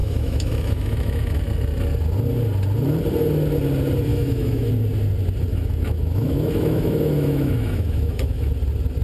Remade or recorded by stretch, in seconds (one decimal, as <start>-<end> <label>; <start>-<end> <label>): 0.0-1.4 remade; 1.4-4.1 recorded; 4.1-4.7 remade; 4.7-5.5 recorded; 5.5-8.5 remade; 8.5-9.0 recorded